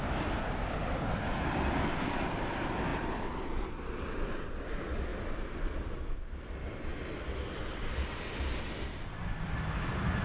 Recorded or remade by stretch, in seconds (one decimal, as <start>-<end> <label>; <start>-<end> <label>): 0.0-10.2 recorded